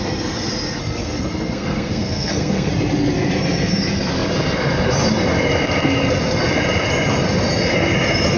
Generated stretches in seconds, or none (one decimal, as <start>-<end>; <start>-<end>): 0.8-2.7